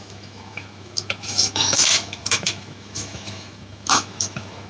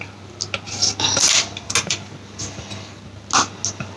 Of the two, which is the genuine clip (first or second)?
second